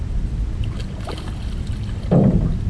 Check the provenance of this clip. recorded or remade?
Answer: recorded